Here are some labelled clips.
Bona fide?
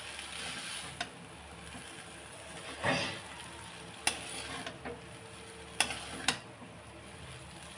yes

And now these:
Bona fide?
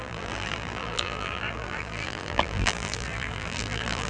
no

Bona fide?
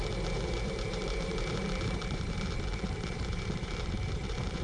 no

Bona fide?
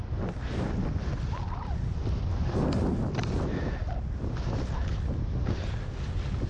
yes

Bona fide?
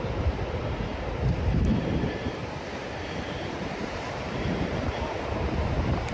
no